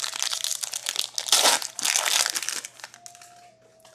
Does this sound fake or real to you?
real